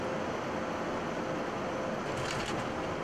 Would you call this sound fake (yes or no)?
no